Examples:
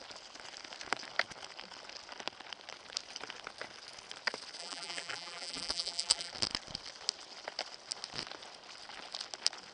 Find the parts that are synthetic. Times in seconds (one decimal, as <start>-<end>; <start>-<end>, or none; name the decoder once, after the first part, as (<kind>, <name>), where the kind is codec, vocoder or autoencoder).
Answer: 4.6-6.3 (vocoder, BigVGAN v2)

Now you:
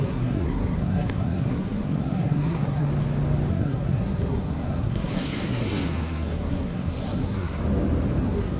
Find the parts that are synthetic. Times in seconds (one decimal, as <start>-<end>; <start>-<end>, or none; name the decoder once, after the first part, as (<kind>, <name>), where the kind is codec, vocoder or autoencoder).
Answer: 0.0-2.9 (codec, SNAC); 3.5-7.6; 8.2-8.6

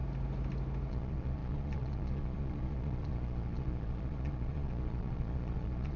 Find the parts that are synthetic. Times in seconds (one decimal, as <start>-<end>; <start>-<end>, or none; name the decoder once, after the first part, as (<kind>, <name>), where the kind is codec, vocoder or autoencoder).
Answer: 0.9-6.0 (vocoder, Vocos)

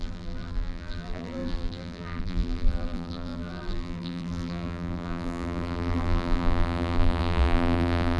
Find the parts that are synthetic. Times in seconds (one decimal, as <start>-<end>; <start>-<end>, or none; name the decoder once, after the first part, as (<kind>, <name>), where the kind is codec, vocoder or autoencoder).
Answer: 0.0-8.2 (vocoder, BigVGAN v2)

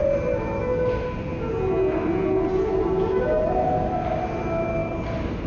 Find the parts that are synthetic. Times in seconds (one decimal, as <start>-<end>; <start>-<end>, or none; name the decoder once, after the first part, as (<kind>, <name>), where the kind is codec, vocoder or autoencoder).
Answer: 0.0-0.6 (vocoder, BigVGAN v2); 4.8-5.5

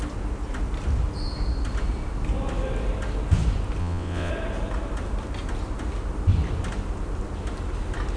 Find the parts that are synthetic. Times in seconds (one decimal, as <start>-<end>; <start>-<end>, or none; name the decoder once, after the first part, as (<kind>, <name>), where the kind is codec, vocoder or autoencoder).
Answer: 3.8-4.3 (vocoder, WaveNeXt)

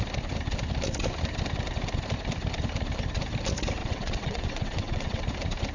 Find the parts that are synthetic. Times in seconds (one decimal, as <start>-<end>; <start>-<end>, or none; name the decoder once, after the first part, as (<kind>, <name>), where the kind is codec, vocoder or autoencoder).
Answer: 3.8-5.2 (vocoder, WaveNeXt)

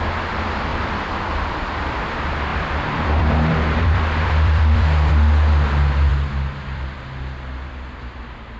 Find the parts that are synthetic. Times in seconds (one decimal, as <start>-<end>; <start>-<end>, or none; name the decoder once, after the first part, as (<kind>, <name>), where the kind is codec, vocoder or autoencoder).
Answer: 0.7-1.9 (vocoder, BigVGAN v2); 2.5-5.1; 6.1-6.8